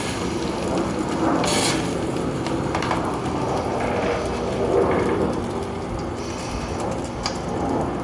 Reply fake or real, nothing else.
real